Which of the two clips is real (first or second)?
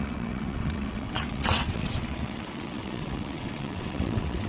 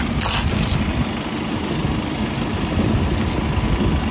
second